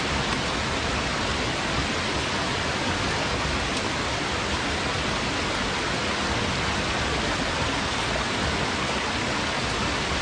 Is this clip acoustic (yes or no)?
yes